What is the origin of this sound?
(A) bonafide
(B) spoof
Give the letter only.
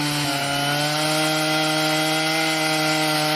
A